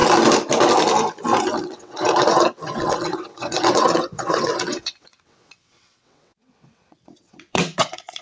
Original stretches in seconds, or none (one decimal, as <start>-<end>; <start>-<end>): 0.0-1.6

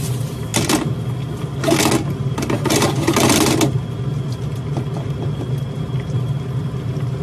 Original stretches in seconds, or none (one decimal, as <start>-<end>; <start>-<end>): 0.0-7.2